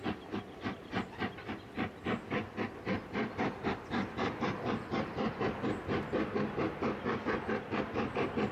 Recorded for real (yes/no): yes